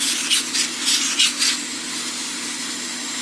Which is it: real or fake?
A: real